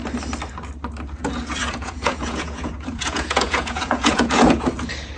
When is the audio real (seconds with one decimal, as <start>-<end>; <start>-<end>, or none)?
0.0-1.6; 4.7-5.2